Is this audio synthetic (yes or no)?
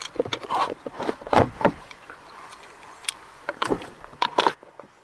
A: yes